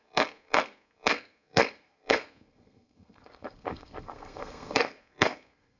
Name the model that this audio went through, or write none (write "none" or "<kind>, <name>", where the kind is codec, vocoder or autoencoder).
codec, SNAC